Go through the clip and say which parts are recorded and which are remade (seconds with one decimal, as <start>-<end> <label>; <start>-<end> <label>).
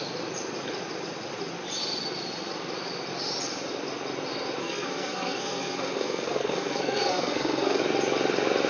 0.0-4.6 recorded; 4.6-7.8 remade; 7.8-8.7 recorded